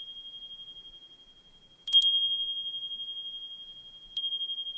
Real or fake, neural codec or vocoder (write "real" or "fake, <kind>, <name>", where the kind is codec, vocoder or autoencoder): real